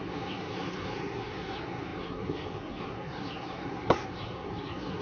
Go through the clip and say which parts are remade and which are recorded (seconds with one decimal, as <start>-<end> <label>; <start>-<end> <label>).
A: 0.0-5.0 remade